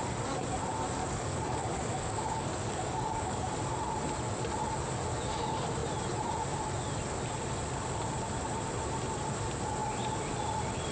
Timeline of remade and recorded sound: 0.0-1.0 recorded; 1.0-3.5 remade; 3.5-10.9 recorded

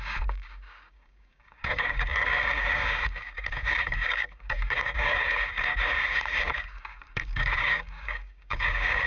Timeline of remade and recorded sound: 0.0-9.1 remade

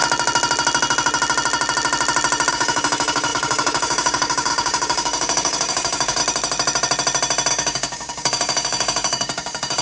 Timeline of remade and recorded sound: 0.0-2.5 recorded; 2.5-6.2 remade; 6.2-7.5 recorded; 7.5-9.8 remade